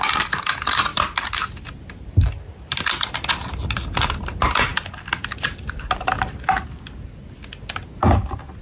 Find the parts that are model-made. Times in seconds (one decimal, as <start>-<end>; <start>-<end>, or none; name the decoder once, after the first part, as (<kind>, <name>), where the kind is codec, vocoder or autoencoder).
none